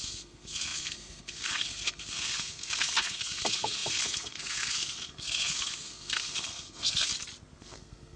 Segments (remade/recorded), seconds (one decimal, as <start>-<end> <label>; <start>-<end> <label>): 0.0-7.1 remade; 7.1-7.6 recorded; 7.6-8.2 remade